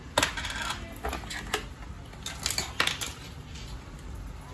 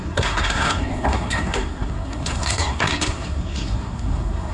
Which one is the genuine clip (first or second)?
first